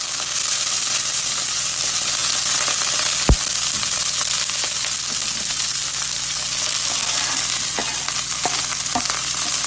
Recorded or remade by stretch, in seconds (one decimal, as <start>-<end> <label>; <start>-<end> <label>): 0.0-0.5 recorded; 0.5-2.2 remade; 2.2-7.3 recorded; 7.3-7.8 remade; 7.8-8.6 recorded; 8.6-9.7 remade